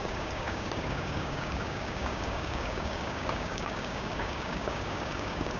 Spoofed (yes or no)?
yes